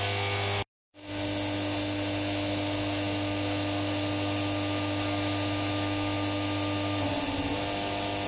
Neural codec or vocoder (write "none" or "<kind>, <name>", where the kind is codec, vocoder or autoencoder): none